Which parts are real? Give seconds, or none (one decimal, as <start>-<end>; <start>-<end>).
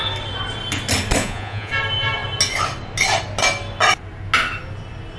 0.0-1.2; 1.7-5.2